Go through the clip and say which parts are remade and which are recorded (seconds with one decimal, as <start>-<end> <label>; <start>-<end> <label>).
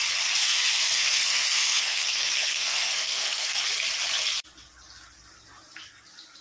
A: 0.0-0.4 recorded; 0.4-3.7 remade; 3.7-6.4 recorded